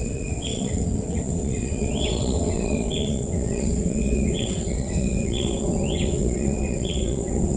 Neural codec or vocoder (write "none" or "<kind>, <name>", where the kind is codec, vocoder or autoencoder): vocoder, WaveNeXt